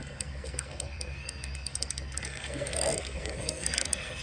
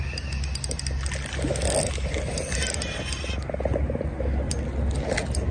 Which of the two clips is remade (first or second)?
first